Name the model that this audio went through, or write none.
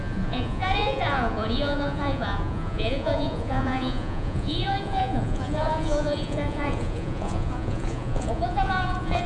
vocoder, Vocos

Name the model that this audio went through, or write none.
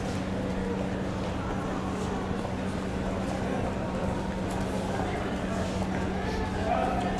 none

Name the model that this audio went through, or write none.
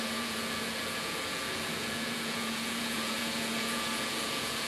vocoder, Vocos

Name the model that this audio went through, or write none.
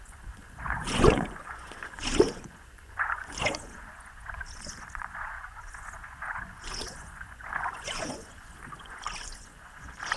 vocoder, Vocos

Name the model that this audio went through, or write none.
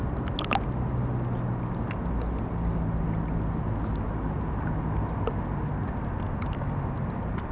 none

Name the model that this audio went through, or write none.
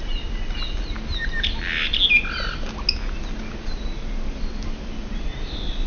none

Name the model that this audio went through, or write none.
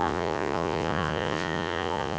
vocoder, Vocos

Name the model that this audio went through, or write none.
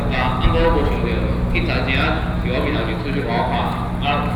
none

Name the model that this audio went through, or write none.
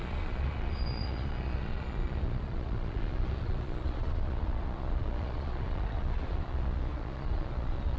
vocoder, Vocos